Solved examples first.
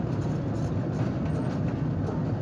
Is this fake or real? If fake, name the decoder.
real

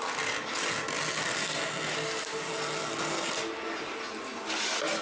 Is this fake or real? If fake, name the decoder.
real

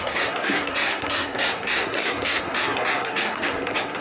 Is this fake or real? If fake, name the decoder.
fake, codec, SNAC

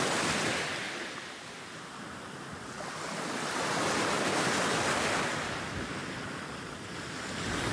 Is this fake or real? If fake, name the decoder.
real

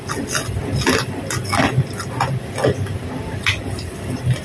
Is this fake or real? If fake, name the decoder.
real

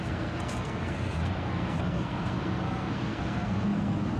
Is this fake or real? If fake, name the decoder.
fake, codec, SNAC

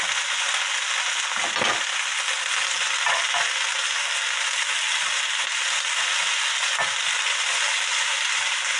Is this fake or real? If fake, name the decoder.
real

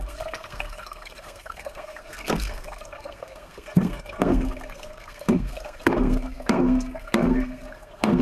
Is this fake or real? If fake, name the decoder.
fake, codec, SNAC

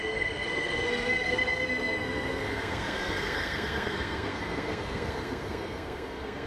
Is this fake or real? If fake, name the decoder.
fake, codec, SNAC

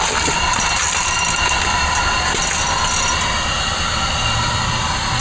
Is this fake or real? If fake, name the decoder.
real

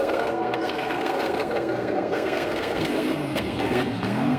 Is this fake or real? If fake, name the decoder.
fake, codec, SNAC